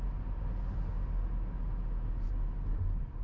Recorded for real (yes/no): yes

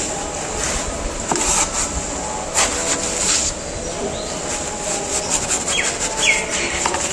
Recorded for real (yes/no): yes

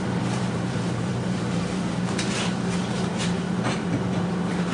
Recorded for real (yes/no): no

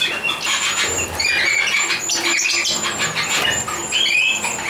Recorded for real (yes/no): yes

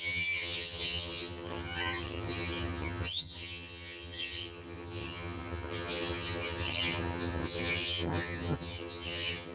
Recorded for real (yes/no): no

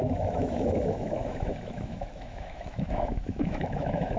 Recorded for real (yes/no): no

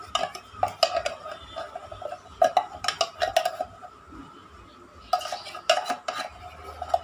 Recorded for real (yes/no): yes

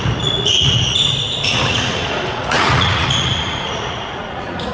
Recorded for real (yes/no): no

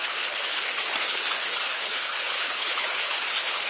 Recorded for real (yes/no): no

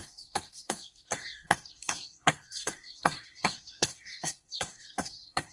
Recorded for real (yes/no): no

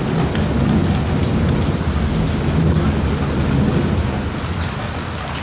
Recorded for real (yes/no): yes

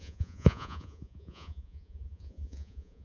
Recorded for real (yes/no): no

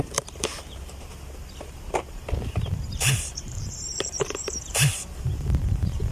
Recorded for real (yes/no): no